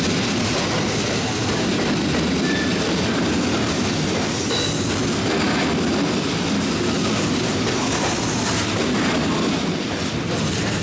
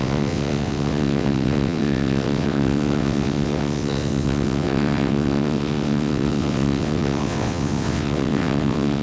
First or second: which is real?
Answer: first